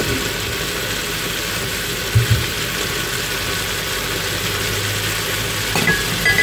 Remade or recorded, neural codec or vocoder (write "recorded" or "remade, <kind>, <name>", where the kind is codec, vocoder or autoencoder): recorded